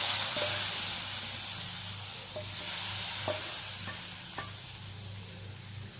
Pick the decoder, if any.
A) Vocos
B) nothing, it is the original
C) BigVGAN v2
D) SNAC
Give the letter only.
B